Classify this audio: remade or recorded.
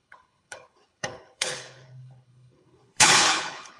remade